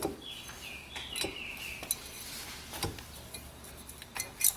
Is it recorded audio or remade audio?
recorded